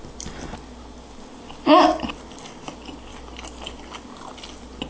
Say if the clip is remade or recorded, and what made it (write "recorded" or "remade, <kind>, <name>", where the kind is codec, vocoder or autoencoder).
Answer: recorded